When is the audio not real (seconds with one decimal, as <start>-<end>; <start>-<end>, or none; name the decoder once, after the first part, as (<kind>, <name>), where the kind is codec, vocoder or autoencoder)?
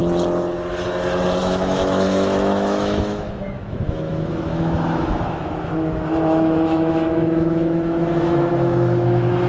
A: 1.4-9.5 (autoencoder, DAC-VAE)